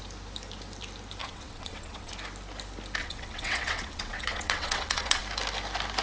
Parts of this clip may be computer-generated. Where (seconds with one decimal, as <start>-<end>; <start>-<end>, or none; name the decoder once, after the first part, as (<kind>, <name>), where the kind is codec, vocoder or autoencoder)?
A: 1.2-2.1 (vocoder, WaveNeXt); 3.0-5.2